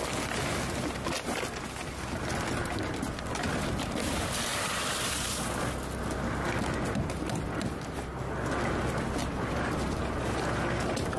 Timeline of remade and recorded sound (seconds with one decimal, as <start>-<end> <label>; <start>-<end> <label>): 0.0-4.5 recorded; 4.5-5.7 remade; 5.7-11.2 recorded